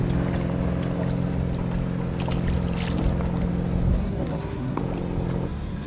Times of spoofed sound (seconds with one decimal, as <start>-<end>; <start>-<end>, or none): 3.9-4.8